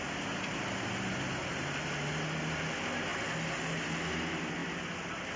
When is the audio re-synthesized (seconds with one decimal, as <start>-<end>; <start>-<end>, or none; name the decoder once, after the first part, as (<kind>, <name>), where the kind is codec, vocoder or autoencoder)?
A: none